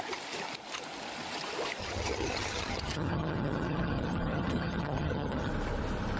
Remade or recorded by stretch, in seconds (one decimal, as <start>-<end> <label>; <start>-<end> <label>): 0.0-1.8 recorded; 1.8-5.5 remade; 5.5-6.2 recorded